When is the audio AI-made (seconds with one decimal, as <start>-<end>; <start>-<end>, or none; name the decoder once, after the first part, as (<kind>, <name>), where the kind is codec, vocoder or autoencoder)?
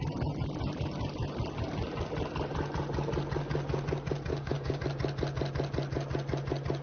4.3-4.8 (codec, DAC)